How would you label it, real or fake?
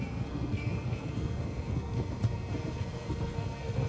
fake